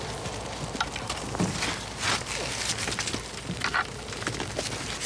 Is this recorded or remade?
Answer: recorded